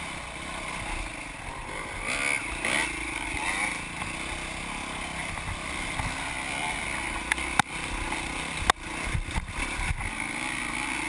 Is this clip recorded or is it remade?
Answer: recorded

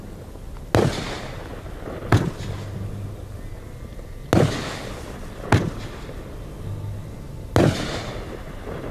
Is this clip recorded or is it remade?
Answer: recorded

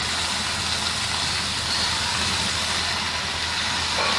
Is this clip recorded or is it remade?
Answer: recorded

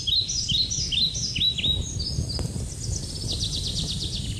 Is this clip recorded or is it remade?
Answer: recorded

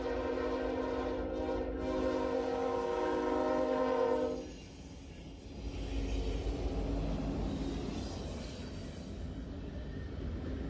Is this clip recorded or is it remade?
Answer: recorded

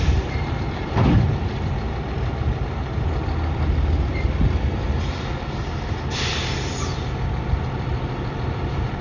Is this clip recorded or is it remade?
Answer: remade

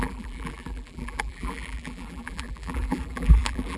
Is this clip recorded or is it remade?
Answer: remade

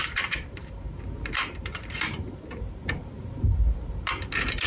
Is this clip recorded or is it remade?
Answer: remade